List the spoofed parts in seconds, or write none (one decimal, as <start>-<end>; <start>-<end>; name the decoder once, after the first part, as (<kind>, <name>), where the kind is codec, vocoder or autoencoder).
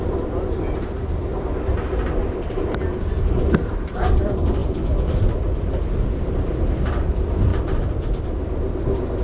0.0-1.3 (vocoder, BigVGAN v2); 3.4-7.5